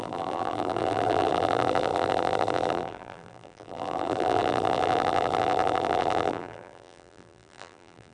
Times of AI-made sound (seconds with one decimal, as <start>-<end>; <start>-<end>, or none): 0.0-8.1